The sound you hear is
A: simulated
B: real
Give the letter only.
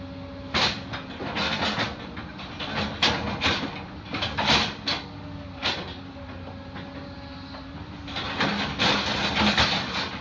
B